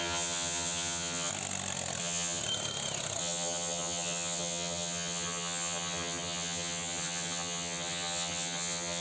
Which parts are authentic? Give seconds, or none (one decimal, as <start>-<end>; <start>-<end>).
1.3-2.0; 2.4-3.2